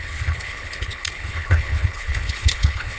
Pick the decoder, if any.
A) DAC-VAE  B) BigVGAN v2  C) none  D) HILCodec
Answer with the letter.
D